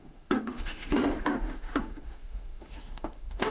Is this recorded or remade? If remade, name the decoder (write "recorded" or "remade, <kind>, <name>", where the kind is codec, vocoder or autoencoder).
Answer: remade, autoencoder, DAC-VAE